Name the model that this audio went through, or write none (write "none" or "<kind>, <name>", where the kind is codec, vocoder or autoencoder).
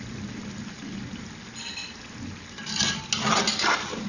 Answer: none